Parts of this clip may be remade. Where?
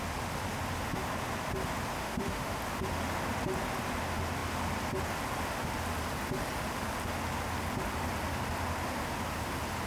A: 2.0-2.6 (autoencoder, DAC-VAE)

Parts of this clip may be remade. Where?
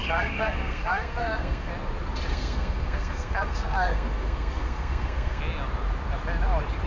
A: 0.0-1.7 (codec, SNAC); 2.3-5.4